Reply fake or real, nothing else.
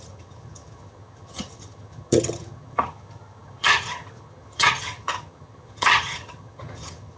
fake